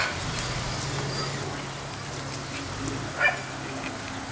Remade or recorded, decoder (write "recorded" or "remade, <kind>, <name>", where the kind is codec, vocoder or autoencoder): recorded